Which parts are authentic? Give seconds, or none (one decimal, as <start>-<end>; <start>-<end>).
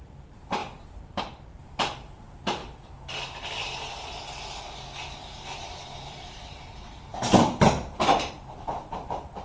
2.6-5.1